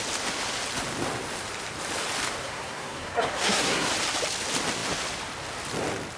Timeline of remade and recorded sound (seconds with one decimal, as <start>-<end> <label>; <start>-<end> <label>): 0.0-2.4 recorded; 2.4-3.9 remade; 3.9-6.2 recorded